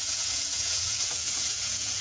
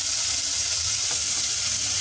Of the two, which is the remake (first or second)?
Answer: first